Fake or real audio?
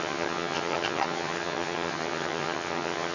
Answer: fake